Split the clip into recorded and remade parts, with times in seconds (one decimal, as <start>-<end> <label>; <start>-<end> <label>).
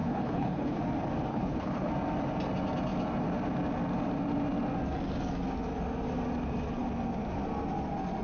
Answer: 0.0-0.8 remade; 0.8-1.3 recorded; 1.3-1.9 remade; 1.9-8.2 recorded